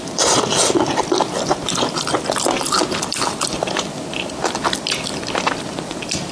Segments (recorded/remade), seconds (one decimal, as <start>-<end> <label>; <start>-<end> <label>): 0.0-3.1 recorded; 3.1-6.3 remade